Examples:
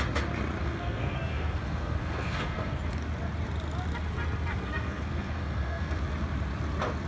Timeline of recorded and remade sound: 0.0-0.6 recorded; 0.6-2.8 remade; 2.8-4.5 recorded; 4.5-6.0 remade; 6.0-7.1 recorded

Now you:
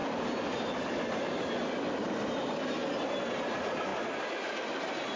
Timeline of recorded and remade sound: 0.0-3.9 recorded; 3.9-5.2 remade